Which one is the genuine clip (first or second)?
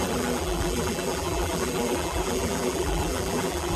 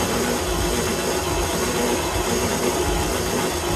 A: second